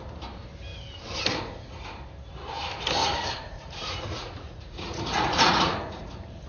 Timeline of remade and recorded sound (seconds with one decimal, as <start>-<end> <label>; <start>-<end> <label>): 0.0-3.0 recorded; 3.0-6.1 remade; 6.1-6.5 recorded